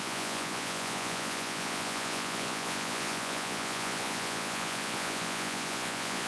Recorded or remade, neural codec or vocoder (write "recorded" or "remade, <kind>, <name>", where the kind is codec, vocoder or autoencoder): remade, vocoder, Vocos